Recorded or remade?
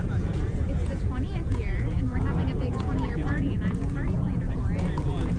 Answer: remade